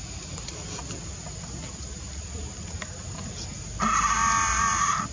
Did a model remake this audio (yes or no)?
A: no